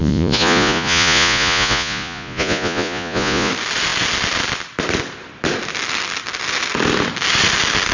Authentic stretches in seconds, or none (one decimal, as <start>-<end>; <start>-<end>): 3.5-7.9